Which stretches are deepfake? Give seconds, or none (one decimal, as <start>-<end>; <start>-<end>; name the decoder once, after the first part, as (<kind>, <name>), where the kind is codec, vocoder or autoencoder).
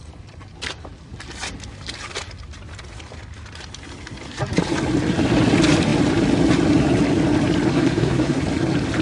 7.7-8.4 (codec, SNAC)